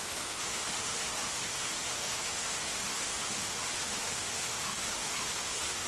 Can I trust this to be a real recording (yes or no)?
no